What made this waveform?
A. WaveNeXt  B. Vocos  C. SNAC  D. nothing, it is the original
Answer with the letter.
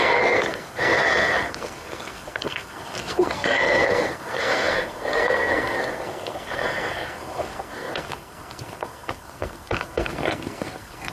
C